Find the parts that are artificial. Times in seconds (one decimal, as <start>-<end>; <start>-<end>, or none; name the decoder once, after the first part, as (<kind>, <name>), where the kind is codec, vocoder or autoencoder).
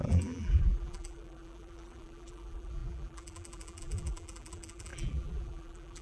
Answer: 0.0-6.0 (vocoder, BigVGAN v2)